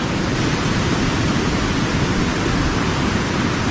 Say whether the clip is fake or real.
real